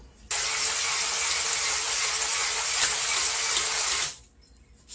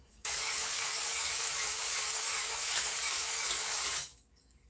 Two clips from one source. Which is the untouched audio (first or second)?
first